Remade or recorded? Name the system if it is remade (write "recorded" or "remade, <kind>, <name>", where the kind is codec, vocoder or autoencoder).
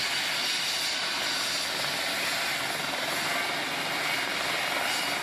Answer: recorded